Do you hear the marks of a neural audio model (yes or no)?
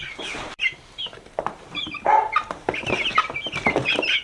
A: yes